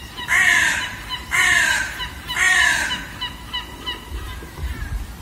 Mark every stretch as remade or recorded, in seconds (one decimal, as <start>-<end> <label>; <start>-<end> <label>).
0.0-2.5 remade; 2.5-4.1 recorded; 4.1-5.2 remade